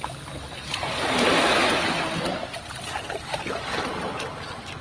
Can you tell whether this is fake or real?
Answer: real